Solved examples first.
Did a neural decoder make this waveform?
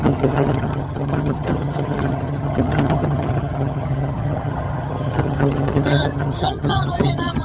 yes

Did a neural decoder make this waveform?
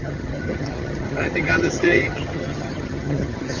yes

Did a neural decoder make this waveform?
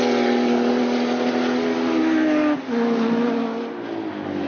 no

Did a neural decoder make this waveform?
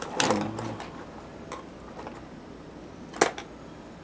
no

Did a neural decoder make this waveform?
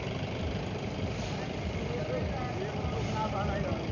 no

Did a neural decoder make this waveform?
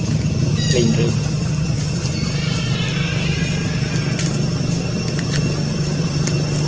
no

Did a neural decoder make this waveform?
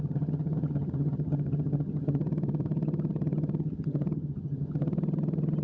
yes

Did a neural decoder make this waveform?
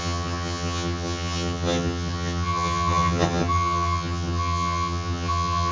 yes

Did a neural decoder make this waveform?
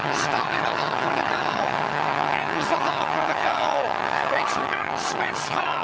yes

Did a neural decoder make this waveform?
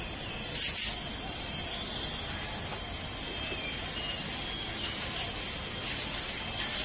no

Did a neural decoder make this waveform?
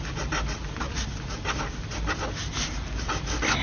no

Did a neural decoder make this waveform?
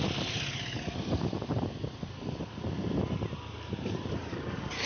no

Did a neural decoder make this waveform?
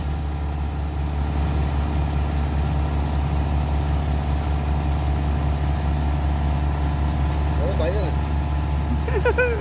no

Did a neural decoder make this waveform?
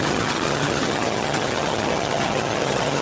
yes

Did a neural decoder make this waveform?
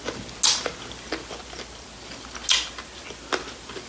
no